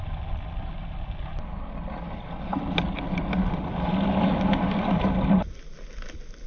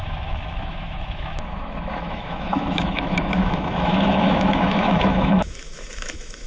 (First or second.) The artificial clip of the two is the second